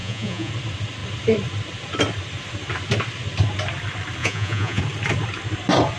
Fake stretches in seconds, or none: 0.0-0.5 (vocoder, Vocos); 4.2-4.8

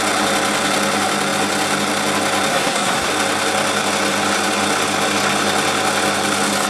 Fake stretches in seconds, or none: 2.5-3.1 (codec, SNAC)

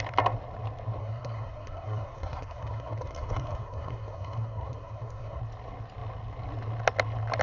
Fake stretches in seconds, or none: 1.0-5.4 (codec, SNAC)

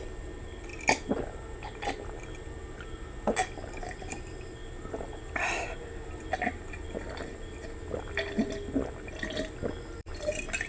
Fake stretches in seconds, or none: none